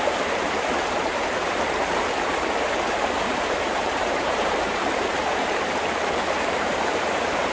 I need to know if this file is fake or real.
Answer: fake